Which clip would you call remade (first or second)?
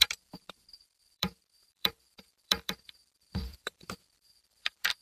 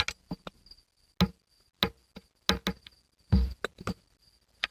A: first